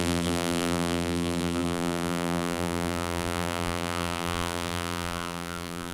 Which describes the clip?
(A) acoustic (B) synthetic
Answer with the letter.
B